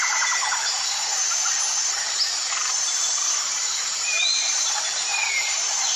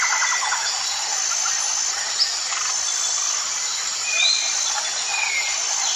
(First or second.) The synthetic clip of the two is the first